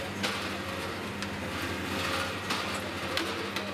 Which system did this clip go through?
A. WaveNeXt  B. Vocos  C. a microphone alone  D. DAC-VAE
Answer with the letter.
C